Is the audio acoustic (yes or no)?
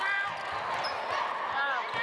yes